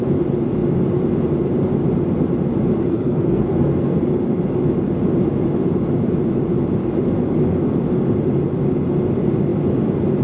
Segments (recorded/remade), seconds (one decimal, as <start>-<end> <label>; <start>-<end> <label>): 0.0-2.8 recorded; 2.8-4.0 remade; 4.0-10.2 recorded